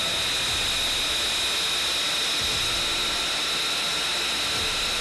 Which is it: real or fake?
real